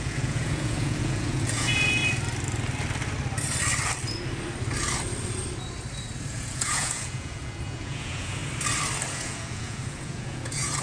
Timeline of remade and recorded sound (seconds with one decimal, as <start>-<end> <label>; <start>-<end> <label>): 0.0-2.0 remade; 2.0-6.3 recorded; 6.3-8.4 remade; 8.4-9.1 recorded; 9.1-10.8 remade